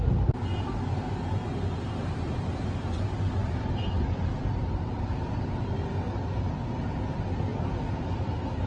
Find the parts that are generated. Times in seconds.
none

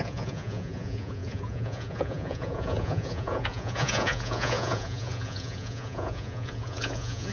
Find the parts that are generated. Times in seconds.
0.0-7.3 (vocoder, Vocos)

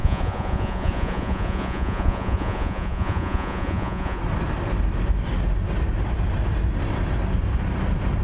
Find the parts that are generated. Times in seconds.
0.0-4.2 (vocoder, Vocos)